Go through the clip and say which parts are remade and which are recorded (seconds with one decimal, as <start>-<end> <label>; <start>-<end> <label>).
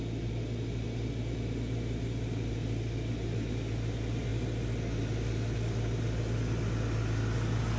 0.0-7.8 recorded